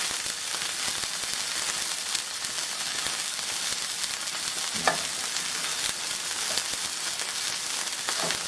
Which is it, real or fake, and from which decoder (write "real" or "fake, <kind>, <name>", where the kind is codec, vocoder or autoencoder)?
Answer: real